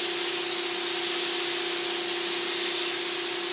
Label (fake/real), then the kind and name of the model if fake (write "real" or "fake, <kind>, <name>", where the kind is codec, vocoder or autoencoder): real